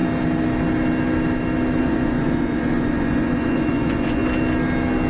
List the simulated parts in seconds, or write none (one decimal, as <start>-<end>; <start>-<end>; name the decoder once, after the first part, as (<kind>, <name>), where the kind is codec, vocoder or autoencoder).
1.8-4.2 (vocoder, Vocos)